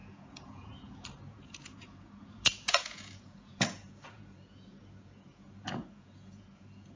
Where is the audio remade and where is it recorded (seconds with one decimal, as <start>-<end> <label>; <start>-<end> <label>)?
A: 0.0-7.0 remade